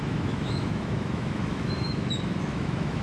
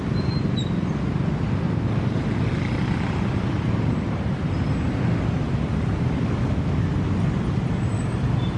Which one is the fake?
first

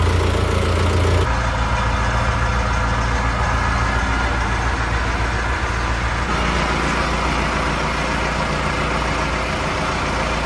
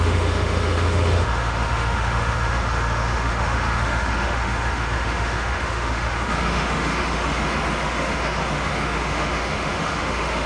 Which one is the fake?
second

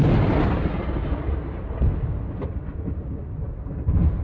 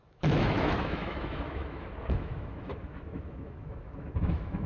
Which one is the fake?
second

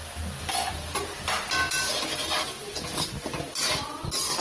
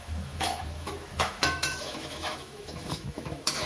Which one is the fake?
second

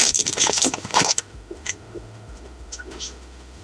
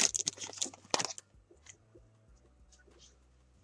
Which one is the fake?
first